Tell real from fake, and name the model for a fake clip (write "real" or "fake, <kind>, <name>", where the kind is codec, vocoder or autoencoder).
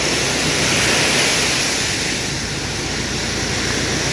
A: real